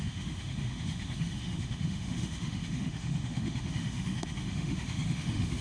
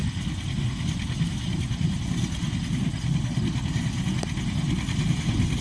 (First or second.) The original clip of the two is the second